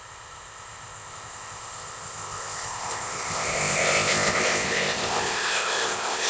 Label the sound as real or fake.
fake